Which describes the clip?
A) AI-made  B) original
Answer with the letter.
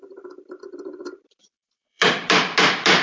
A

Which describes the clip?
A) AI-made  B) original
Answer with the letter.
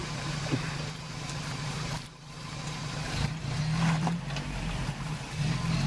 A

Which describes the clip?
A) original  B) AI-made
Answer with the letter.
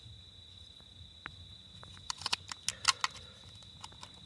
A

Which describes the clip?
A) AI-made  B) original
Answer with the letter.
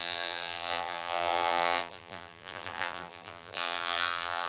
A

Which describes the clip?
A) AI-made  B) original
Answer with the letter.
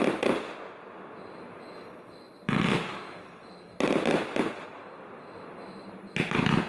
B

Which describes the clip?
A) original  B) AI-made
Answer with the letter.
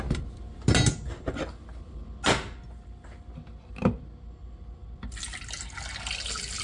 A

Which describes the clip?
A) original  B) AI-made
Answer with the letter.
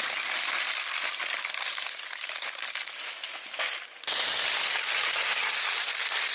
A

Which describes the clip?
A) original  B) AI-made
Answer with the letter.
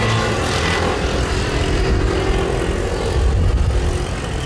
A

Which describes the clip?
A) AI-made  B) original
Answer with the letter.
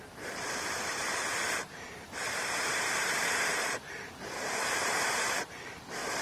A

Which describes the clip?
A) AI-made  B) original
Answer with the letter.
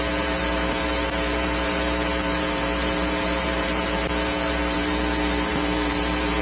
A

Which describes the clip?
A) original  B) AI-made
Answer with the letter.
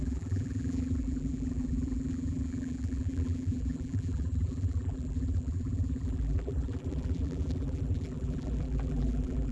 B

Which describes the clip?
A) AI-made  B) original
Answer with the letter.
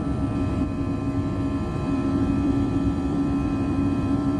A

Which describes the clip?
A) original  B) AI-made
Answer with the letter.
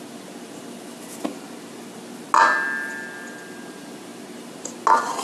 A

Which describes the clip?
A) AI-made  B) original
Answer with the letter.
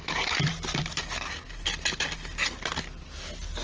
B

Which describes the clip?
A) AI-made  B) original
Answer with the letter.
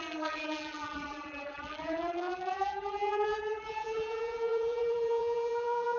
A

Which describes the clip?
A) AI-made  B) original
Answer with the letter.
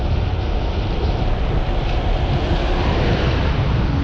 B